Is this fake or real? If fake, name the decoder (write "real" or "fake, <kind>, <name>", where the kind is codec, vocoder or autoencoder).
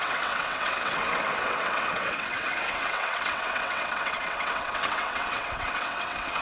fake, vocoder, WaveNeXt